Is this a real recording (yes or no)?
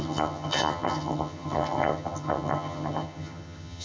no